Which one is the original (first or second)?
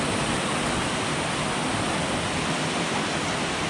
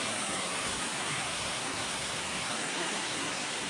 first